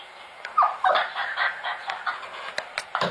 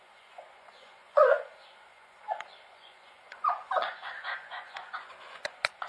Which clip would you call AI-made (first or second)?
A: second